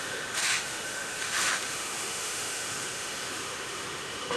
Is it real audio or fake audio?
fake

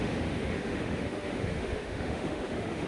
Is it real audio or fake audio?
fake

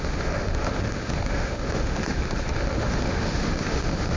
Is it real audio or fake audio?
fake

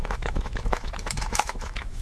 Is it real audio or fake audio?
fake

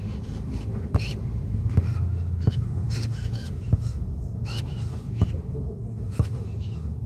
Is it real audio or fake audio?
fake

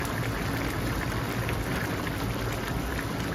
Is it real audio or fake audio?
real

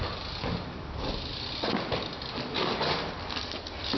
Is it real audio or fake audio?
real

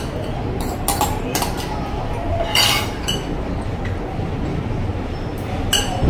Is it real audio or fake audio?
real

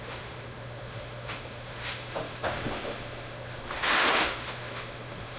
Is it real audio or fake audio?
fake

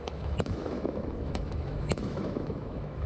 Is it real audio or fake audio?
fake